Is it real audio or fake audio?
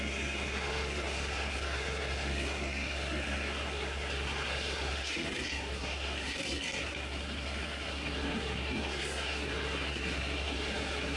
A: fake